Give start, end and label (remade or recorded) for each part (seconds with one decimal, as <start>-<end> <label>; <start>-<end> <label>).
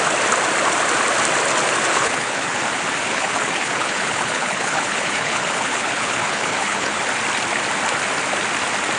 0.0-1.9 recorded; 1.9-2.6 remade; 2.6-3.1 recorded; 3.1-7.0 remade; 7.0-9.0 recorded